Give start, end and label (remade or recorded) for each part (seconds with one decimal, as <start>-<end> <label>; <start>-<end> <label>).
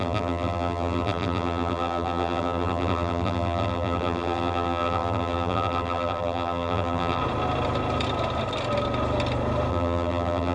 0.0-7.2 remade; 7.2-9.7 recorded; 9.7-10.5 remade